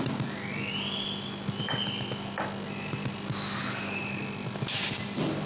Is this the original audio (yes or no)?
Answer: yes